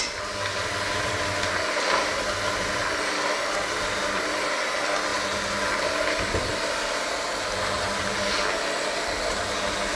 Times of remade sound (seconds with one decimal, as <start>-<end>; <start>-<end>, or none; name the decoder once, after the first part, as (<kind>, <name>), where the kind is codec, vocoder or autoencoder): none